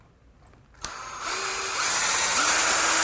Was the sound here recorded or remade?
recorded